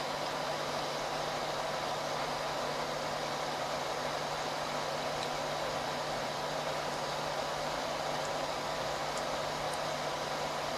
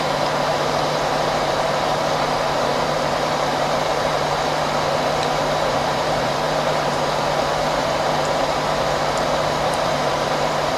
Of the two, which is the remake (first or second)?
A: second